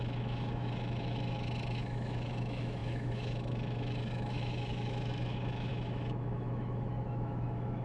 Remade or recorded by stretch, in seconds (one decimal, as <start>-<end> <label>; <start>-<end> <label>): 0.0-7.8 remade